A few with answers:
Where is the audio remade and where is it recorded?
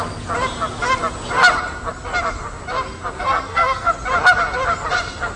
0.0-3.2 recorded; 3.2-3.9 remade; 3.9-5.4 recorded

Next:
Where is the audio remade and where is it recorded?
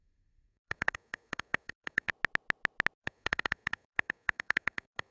0.0-2.1 remade; 2.1-3.0 recorded; 3.0-5.1 remade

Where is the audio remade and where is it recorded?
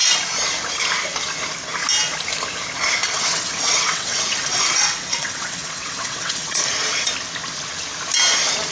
0.0-3.1 recorded; 3.1-6.6 remade; 6.6-8.7 recorded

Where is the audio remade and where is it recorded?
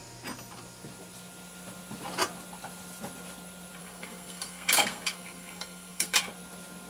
0.0-3.8 recorded; 3.8-6.2 remade; 6.2-6.9 recorded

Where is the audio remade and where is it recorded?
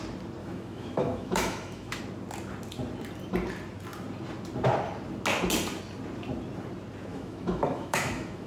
0.0-0.4 recorded; 0.4-2.0 remade; 2.0-7.1 recorded; 7.1-8.5 remade